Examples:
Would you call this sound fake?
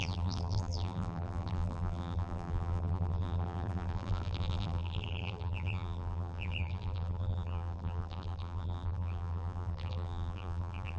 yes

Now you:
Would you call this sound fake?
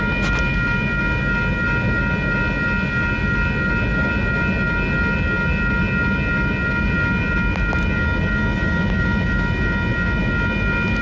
no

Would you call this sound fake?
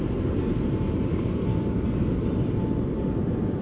no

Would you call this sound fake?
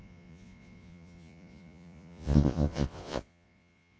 yes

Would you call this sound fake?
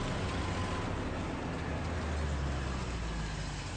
no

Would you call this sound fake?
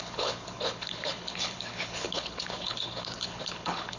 yes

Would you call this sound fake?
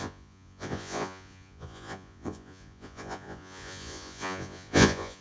yes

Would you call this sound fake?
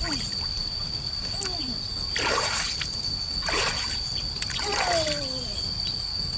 no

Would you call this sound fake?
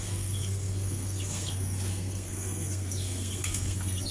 yes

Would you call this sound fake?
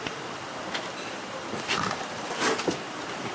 no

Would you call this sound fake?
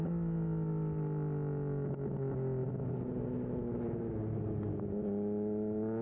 no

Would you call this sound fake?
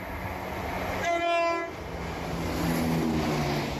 no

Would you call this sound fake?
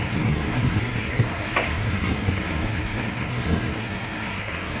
yes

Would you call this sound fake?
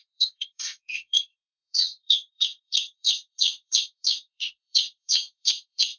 yes